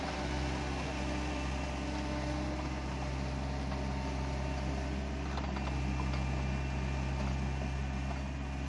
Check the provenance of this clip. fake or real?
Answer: real